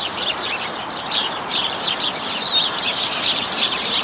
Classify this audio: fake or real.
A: fake